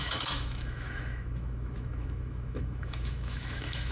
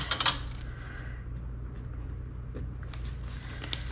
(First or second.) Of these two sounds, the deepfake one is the first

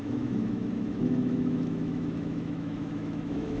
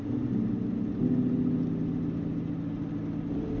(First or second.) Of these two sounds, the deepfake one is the first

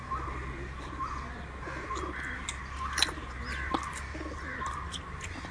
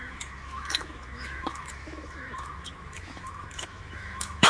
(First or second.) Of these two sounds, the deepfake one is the second